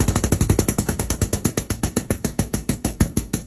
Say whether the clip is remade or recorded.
remade